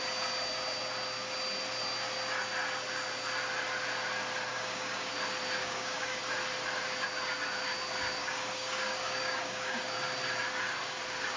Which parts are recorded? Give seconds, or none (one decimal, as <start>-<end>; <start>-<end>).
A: 0.0-4.5; 5.1-5.6; 6.2-8.2; 9.9-11.4

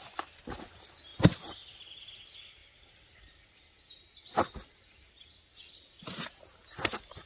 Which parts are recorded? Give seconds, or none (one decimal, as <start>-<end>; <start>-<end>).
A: 0.0-7.3

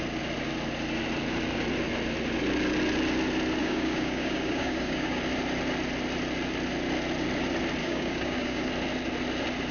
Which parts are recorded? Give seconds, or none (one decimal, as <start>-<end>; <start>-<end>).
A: 0.0-3.6; 5.2-7.8; 8.7-9.7

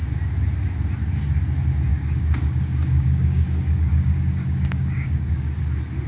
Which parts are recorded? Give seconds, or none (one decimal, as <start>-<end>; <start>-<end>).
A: 0.0-1.9; 5.6-6.1

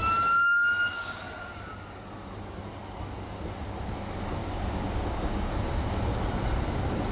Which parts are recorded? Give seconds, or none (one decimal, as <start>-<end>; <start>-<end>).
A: 1.2-4.4; 5.5-7.1